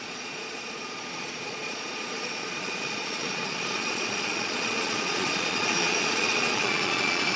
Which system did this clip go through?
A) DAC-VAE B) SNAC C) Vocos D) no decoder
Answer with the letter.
C